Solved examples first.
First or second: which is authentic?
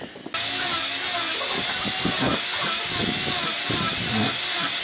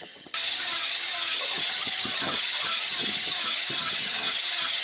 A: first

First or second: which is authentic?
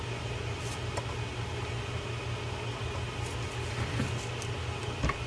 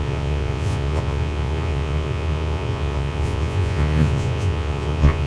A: first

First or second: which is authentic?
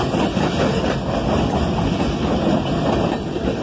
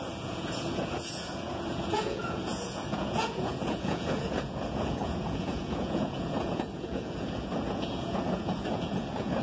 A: first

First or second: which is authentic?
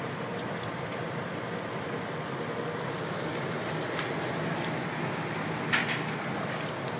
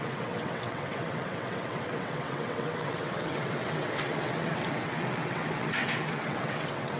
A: first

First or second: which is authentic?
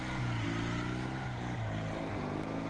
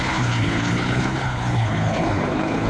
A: first